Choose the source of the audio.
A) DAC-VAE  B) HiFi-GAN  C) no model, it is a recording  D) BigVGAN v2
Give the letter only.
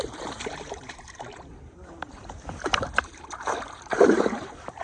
D